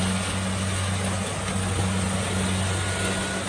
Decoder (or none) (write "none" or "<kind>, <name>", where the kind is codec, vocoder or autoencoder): none